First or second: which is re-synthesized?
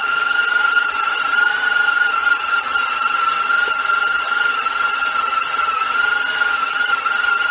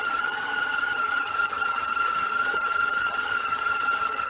second